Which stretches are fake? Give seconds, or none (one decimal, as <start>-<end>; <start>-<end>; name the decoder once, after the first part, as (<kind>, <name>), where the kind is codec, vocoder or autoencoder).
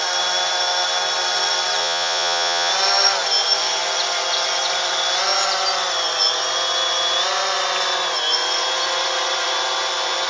1.8-2.7 (vocoder, Vocos)